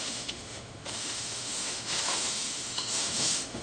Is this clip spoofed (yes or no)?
yes